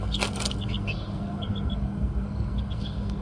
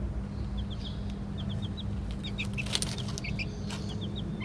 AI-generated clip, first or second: first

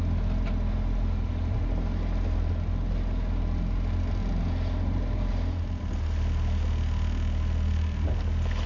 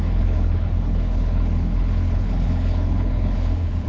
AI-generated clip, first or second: second